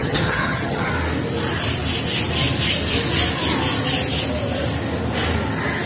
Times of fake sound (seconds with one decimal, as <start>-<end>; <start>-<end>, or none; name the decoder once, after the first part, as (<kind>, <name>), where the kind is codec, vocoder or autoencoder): 0.0-0.9 (vocoder, HiFi-GAN)